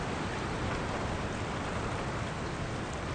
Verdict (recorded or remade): recorded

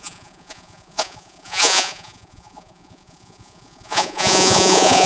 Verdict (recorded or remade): remade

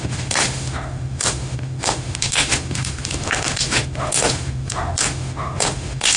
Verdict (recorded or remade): remade